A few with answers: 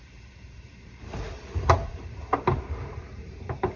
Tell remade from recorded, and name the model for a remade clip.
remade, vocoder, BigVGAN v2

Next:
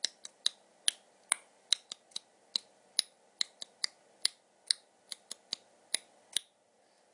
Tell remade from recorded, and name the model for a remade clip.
recorded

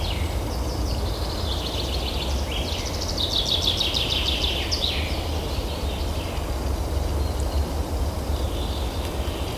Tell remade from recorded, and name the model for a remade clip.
recorded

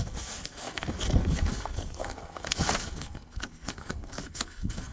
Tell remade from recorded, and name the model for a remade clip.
remade, codec, SNAC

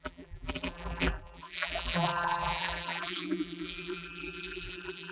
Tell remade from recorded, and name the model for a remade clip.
remade, vocoder, BigVGAN v2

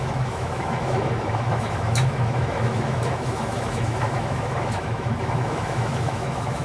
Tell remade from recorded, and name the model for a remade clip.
remade, autoencoder, DAC-VAE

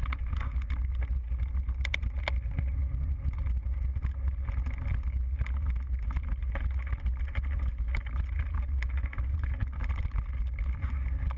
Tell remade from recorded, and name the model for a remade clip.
recorded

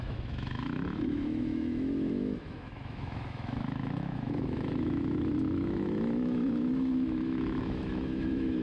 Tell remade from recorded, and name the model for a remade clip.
remade, autoencoder, DAC-VAE